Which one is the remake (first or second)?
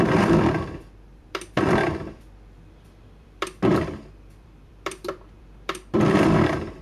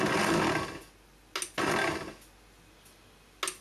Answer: first